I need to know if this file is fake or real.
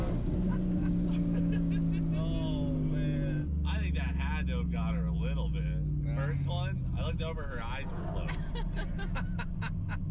real